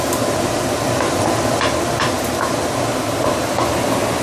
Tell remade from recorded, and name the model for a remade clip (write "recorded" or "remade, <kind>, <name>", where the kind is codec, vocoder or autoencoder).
recorded